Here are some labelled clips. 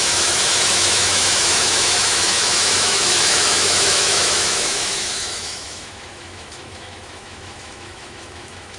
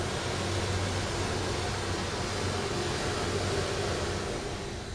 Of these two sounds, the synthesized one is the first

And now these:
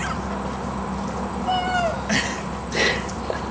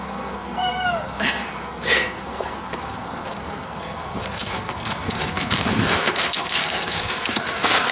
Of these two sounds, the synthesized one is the second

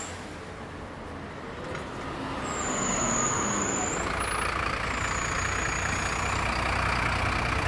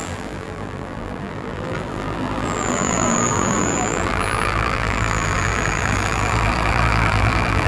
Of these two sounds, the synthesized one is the second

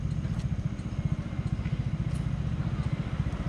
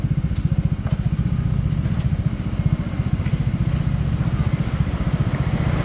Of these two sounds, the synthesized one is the second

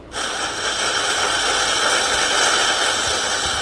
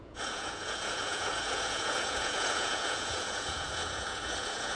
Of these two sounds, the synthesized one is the second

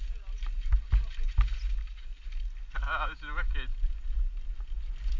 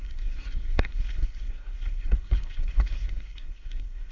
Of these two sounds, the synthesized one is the second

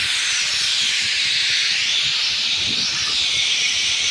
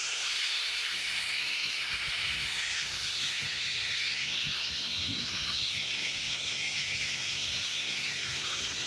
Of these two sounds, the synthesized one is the second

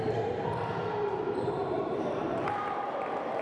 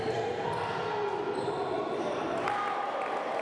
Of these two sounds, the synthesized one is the first